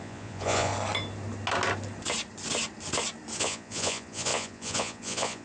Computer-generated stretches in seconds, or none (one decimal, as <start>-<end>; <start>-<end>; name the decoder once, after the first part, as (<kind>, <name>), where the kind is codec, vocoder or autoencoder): 0.0-0.7 (vocoder, Vocos); 3.4-5.4